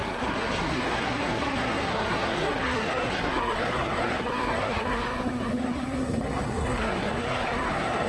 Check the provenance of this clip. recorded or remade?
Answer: remade